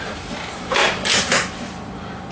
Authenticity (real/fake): fake